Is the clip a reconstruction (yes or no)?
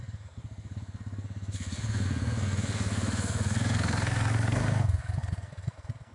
yes